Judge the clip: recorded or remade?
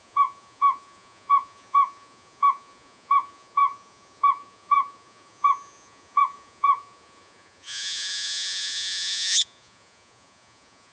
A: remade